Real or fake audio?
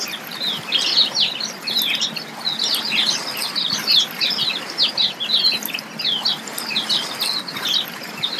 real